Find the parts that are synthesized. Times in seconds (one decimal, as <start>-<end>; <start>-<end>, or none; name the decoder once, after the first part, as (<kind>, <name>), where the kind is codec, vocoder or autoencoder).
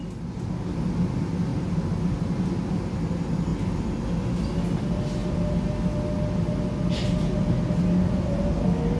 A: 1.5-2.3 (vocoder, BigVGAN v2); 5.2-5.7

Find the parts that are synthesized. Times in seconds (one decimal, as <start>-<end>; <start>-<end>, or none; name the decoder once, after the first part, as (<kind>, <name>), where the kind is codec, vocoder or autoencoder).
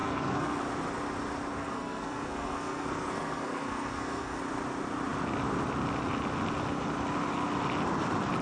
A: 0.0-0.6 (codec, SNAC); 1.5-4.4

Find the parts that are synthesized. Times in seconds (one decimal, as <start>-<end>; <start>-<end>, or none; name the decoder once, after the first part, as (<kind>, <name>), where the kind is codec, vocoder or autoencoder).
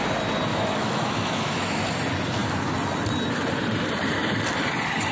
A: 0.5-1.8 (autoencoder, DAC-VAE)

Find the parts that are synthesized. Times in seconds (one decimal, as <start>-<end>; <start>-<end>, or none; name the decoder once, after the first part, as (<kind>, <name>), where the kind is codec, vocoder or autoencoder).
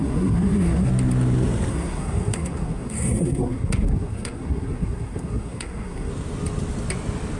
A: 0.0-0.9 (codec, SNAC); 1.7-6.1